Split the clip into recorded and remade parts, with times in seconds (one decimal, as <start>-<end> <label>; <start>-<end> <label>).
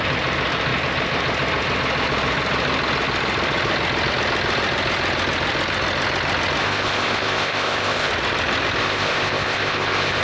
0.0-6.6 recorded; 6.6-8.1 remade; 8.1-8.8 recorded; 8.8-10.2 remade